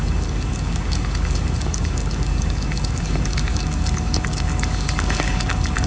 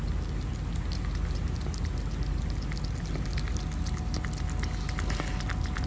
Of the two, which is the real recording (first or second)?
second